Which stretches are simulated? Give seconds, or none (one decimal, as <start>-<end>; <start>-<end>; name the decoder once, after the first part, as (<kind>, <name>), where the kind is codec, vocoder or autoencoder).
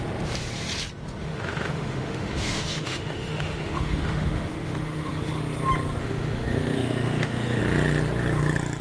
1.2-5.4 (autoencoder, DAC-VAE); 6.0-7.6